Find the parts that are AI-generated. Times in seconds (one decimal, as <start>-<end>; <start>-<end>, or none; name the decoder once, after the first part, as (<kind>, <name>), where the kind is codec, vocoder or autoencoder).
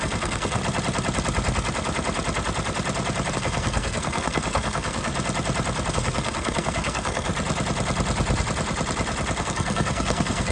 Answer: 0.0-0.6 (codec, SNAC); 3.3-5.1; 5.9-7.3; 9.4-10.5